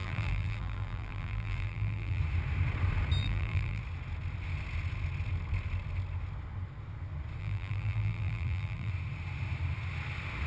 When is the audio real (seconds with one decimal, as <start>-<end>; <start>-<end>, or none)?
2.2-3.2; 3.8-7.4; 8.9-10.5